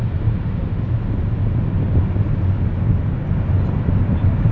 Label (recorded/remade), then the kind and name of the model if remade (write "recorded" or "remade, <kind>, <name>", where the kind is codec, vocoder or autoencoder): recorded